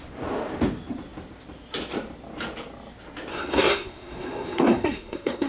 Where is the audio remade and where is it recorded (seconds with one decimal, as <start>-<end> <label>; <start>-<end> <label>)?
0.0-3.3 recorded; 3.3-5.5 remade